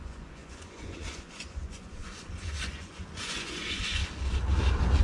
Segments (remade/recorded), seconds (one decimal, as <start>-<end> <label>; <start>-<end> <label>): 0.0-4.0 remade; 4.0-5.0 recorded